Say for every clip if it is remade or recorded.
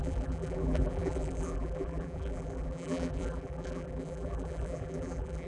remade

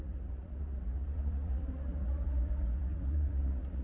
remade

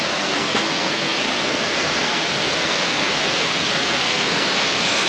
remade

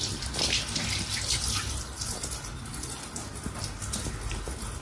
recorded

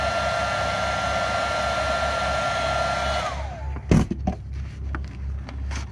recorded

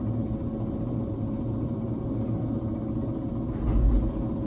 recorded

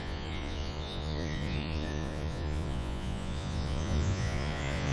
remade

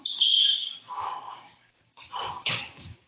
remade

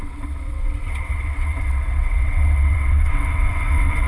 remade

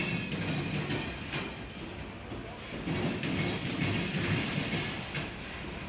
recorded